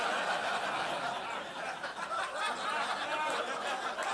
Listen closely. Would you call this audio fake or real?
real